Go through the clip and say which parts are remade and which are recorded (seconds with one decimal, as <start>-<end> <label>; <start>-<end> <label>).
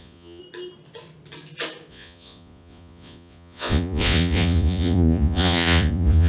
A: 0.0-0.4 remade; 0.4-1.9 recorded; 1.9-6.3 remade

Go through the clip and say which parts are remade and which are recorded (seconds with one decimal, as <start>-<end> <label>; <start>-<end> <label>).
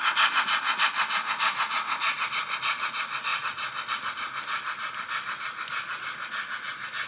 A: 0.0-7.1 recorded